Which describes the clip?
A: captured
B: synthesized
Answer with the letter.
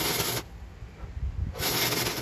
A